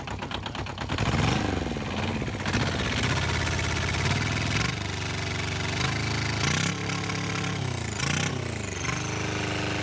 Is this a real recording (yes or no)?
yes